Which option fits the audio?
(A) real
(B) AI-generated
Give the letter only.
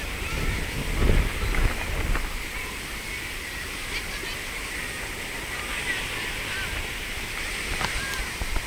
A